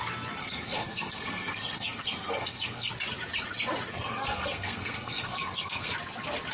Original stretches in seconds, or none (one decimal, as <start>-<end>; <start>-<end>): 0.0-0.4; 2.9-3.9; 5.9-6.5